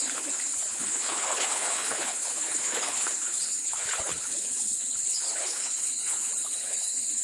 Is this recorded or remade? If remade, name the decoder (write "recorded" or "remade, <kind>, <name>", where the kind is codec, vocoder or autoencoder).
remade, codec, HILCodec